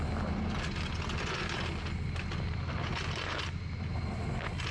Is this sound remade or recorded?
recorded